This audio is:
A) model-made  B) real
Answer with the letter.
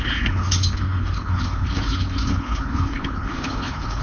A